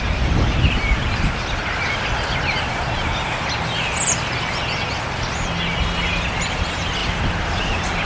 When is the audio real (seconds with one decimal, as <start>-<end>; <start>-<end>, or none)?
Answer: 0.0-8.0